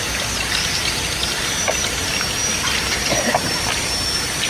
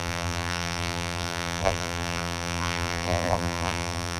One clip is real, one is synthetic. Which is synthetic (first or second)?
second